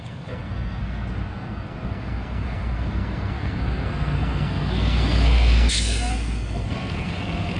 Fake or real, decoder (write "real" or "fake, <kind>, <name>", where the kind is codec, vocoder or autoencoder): fake, codec, SNAC